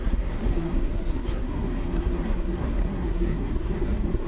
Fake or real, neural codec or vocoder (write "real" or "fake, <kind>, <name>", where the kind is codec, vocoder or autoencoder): fake, codec, SNAC